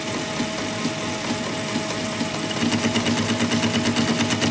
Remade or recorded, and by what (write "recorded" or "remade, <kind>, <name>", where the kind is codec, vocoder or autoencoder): recorded